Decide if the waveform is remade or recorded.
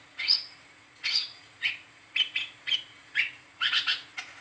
remade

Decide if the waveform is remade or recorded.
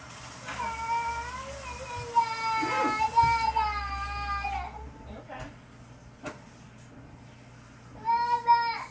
recorded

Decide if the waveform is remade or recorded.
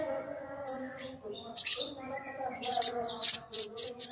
remade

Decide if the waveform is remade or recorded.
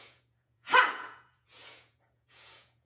remade